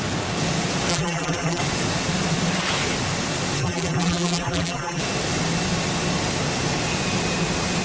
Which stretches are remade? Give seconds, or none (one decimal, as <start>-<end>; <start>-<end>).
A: 0.9-1.6; 3.6-5.0